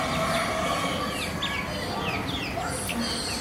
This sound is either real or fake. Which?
real